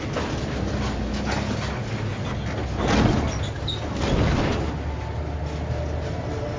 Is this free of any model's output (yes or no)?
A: yes